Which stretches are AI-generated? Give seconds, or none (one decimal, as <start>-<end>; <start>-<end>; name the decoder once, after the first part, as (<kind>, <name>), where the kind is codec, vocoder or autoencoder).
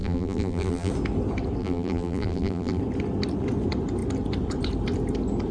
0.0-0.9 (vocoder, BigVGAN v2); 1.6-2.8